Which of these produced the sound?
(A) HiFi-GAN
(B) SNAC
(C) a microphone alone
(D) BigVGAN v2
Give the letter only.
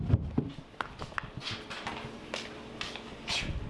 C